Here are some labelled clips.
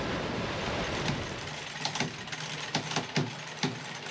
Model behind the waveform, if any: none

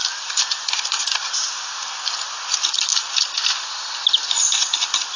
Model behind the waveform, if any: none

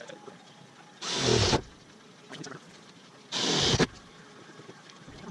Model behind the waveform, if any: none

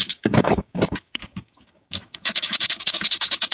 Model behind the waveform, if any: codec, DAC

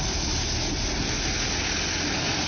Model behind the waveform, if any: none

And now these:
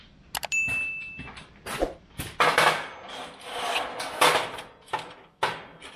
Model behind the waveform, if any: none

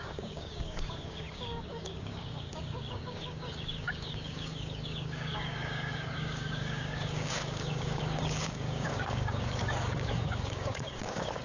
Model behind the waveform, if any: codec, DAC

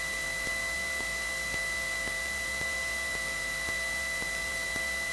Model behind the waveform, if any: none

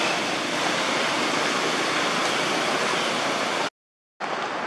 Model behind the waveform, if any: none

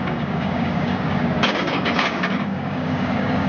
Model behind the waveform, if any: codec, DAC